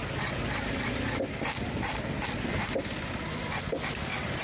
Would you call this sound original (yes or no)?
yes